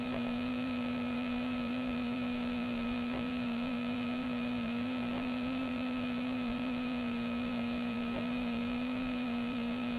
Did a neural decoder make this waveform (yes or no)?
yes